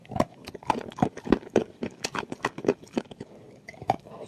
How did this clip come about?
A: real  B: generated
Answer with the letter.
B